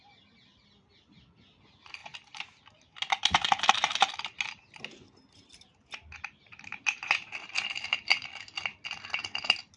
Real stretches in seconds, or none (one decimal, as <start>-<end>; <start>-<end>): 0.0-9.8